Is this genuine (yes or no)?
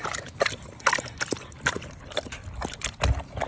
yes